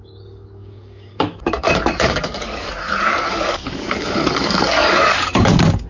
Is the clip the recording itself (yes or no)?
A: no